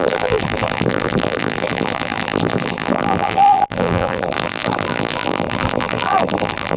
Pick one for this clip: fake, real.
fake